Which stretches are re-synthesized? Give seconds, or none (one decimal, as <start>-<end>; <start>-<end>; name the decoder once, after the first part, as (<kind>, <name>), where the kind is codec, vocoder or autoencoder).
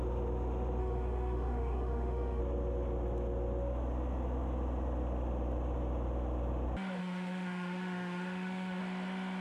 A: 0.8-2.4 (autoencoder, DAC-VAE); 7.0-8.8